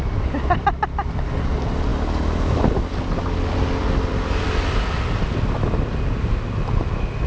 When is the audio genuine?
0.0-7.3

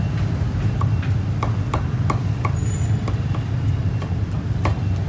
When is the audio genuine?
0.0-5.1

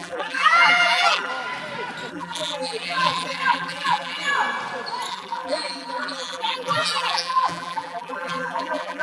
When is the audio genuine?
1.3-2.1; 4.3-5.1